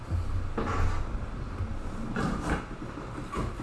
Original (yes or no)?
yes